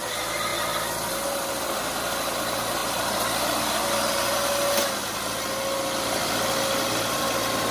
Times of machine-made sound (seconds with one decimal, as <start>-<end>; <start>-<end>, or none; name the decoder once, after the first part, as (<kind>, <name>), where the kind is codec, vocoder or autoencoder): none